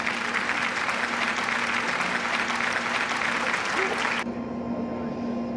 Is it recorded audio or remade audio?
recorded